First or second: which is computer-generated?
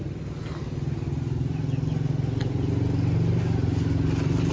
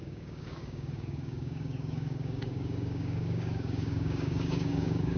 second